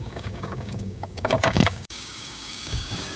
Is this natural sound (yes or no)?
no